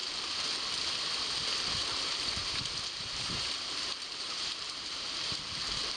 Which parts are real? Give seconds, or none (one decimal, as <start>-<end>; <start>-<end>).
0.0-1.8; 5.4-6.0